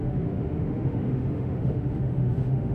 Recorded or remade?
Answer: remade